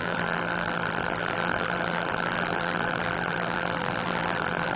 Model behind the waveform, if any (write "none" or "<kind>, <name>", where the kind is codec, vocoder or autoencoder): vocoder, BigVGAN v2